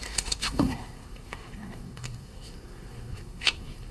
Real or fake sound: fake